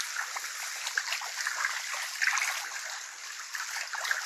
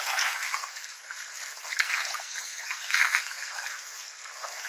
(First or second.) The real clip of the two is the first